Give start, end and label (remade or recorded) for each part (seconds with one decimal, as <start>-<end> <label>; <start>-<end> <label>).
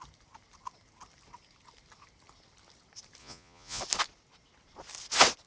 0.0-3.2 recorded; 3.2-3.8 remade; 3.8-5.5 recorded